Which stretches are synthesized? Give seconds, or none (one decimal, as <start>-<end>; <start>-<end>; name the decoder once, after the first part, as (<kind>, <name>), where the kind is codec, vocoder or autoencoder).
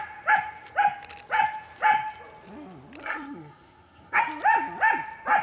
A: 3.0-4.2 (codec, SNAC)